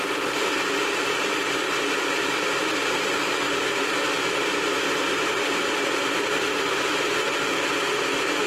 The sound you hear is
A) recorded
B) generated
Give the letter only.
A